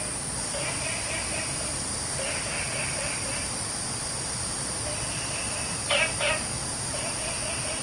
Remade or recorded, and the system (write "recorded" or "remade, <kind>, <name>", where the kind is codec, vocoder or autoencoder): recorded